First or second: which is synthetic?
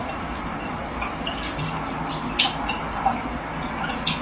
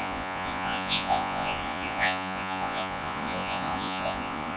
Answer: second